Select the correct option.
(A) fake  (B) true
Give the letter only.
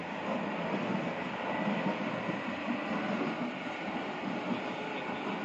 B